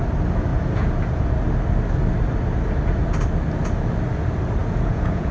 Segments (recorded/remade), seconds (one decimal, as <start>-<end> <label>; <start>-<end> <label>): 0.0-0.5 recorded; 0.5-1.3 remade; 1.3-4.6 recorded; 4.6-5.3 remade